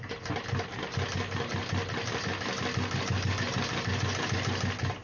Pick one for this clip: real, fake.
real